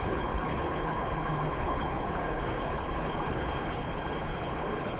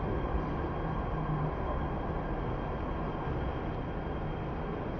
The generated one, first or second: first